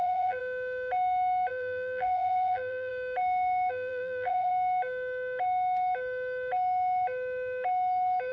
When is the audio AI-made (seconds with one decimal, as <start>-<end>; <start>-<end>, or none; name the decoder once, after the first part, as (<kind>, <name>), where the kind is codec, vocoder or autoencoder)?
0.0-0.4 (vocoder, BigVGAN v2); 1.5-2.9; 3.7-4.5